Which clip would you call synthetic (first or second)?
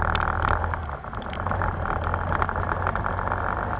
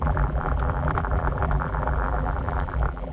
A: second